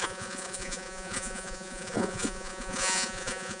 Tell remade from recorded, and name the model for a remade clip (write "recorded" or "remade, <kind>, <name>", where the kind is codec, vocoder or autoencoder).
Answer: remade, vocoder, Vocos